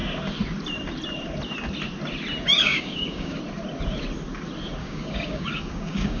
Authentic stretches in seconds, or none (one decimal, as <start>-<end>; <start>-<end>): 0.0-2.6; 3.4-4.8